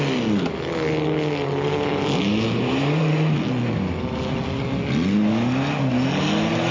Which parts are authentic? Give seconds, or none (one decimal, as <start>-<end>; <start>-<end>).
0.0-1.9; 3.4-6.7